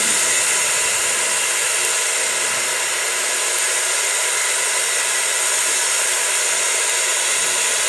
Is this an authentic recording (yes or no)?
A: yes